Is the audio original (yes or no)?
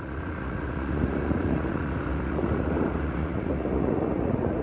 no